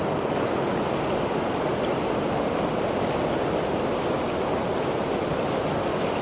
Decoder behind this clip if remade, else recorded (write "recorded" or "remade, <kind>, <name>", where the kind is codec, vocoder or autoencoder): recorded